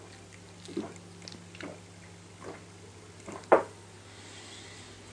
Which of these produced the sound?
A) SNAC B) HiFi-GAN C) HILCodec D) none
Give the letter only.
D